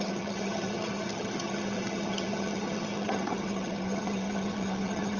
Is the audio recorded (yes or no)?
no